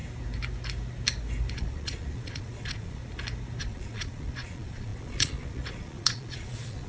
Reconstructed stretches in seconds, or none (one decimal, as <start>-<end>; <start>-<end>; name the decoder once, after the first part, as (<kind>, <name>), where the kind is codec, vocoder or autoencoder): 1.5-3.0 (vocoder, Vocos); 3.6-6.9